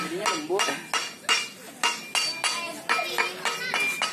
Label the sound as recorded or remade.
recorded